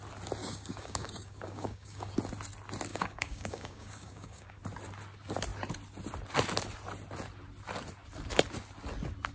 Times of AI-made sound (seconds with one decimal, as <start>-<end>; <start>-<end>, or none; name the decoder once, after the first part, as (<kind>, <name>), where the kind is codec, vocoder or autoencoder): 0.4-2.1 (codec, DAC); 2.9-4.6